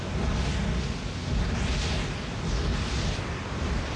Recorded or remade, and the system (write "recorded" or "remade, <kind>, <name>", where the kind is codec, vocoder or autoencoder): recorded